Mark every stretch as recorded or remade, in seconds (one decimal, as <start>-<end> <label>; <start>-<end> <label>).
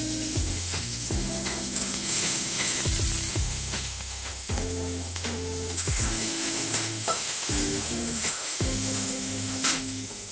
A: 0.0-2.8 remade; 2.8-3.3 recorded; 3.3-10.3 remade